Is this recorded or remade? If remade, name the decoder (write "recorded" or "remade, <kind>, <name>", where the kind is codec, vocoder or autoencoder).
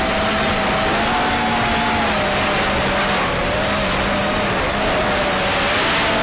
recorded